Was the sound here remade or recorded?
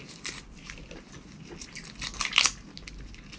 recorded